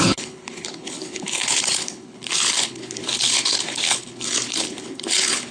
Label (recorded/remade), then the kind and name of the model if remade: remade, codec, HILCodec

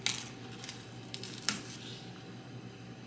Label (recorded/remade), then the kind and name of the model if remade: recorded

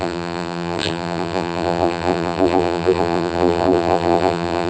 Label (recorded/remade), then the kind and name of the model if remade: remade, vocoder, BigVGAN v2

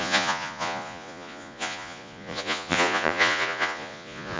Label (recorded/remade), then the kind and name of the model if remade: remade, vocoder, Vocos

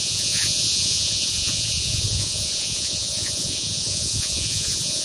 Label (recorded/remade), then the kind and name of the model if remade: remade, vocoder, Vocos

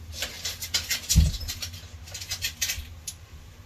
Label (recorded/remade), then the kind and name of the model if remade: recorded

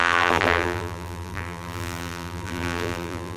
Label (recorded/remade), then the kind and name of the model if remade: remade, vocoder, BigVGAN v2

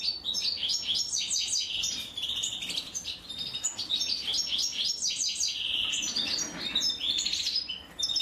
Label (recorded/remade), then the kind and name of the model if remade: recorded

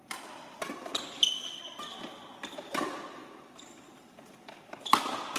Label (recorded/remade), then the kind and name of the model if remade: recorded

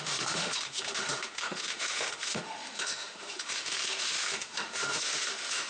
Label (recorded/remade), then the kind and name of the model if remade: remade, autoencoder, DAC-VAE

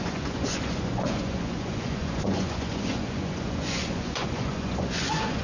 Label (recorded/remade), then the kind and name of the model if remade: remade, vocoder, Vocos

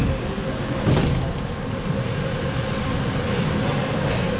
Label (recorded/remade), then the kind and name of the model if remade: recorded